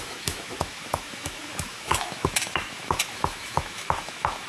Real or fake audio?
fake